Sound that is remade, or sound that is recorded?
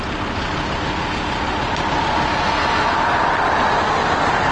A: recorded